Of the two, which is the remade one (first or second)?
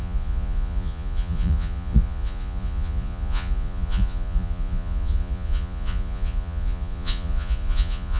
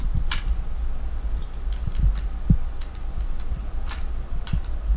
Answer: first